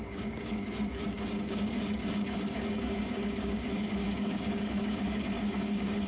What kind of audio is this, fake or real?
fake